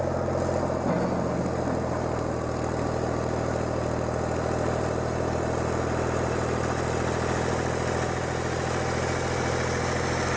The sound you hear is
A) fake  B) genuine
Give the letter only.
B